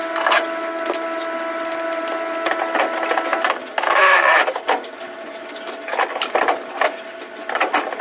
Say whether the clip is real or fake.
real